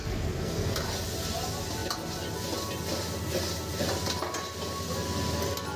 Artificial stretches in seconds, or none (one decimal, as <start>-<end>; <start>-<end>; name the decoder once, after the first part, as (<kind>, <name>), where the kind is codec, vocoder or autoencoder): 0.0-0.7 (codec, SNAC)

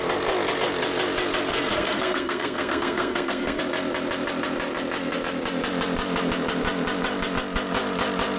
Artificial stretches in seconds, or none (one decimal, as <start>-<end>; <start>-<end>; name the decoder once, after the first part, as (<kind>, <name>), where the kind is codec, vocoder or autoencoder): 1.5-3.6 (codec, SNAC)

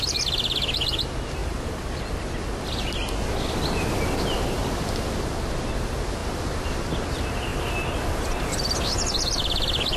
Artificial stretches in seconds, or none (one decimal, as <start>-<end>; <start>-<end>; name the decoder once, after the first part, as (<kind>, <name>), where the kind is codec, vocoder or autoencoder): none

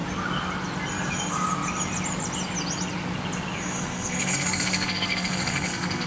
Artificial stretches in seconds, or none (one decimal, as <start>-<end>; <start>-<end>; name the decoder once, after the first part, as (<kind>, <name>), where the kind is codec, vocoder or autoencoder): 3.7-6.1 (codec, SNAC)

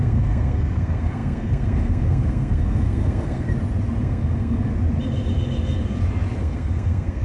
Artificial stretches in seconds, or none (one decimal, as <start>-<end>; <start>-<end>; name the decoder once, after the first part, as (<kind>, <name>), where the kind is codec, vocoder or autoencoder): 0.0-3.5 (codec, SNAC); 4.0-4.7; 6.4-7.2

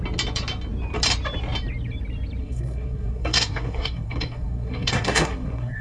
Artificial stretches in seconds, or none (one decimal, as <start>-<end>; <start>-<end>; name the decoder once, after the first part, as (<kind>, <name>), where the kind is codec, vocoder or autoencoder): 2.4-5.8 (codec, SNAC)

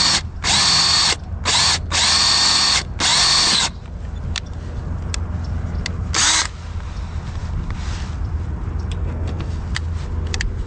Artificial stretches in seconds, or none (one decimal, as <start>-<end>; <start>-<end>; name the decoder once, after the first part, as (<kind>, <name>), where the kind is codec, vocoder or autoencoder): 9.0-9.6 (codec, SNAC)